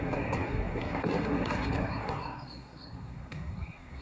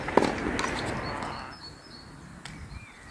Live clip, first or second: second